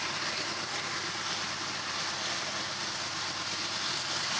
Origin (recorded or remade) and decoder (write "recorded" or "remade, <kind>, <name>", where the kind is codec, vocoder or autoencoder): recorded